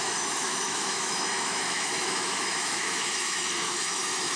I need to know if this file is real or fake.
fake